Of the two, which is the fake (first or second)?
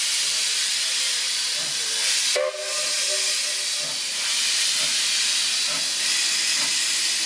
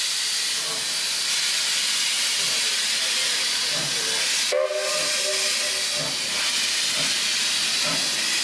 first